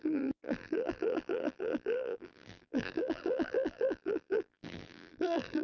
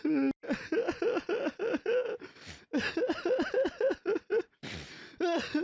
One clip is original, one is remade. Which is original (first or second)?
second